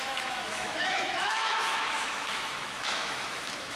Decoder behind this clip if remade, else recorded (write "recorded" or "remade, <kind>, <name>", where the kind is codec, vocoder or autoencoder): remade, autoencoder, DAC-VAE